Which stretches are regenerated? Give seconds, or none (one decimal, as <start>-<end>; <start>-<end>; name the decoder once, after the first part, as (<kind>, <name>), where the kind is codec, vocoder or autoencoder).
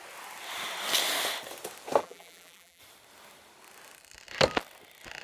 2.0-2.8 (vocoder, BigVGAN v2)